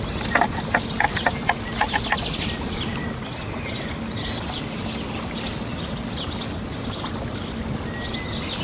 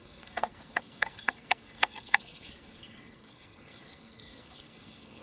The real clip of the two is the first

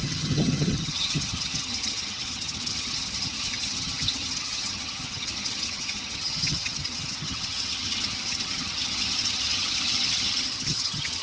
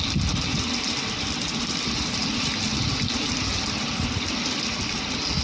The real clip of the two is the second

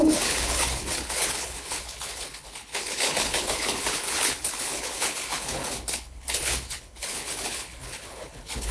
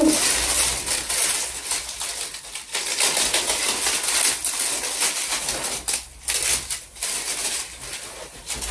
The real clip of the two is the second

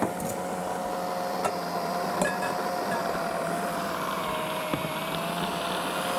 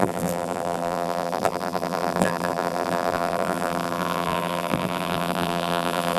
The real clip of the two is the first